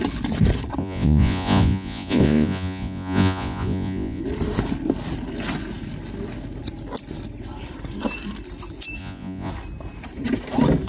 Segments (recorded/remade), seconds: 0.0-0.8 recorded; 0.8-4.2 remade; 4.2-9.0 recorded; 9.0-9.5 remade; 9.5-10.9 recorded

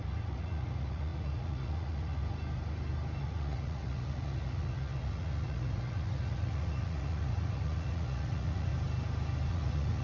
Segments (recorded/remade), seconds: 0.0-2.2 remade; 2.2-3.2 recorded; 3.2-8.7 remade; 8.7-9.5 recorded; 9.5-10.0 remade

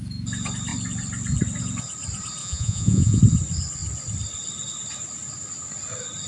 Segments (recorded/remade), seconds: 0.0-2.4 recorded; 2.4-3.2 remade; 3.2-6.3 recorded